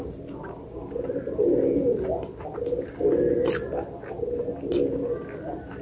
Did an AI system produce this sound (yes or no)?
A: no